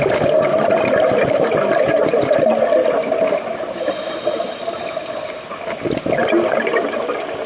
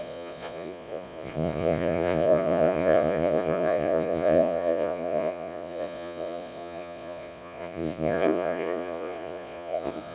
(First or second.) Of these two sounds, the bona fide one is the first